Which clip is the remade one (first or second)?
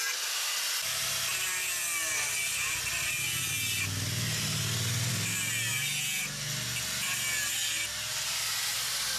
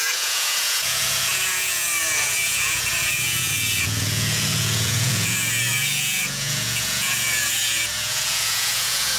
second